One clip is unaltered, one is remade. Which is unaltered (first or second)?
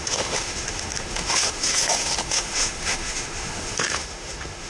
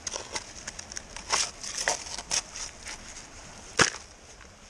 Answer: second